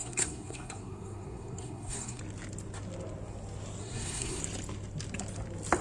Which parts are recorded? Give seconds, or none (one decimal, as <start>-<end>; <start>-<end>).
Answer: 2.2-3.8; 4.4-5.8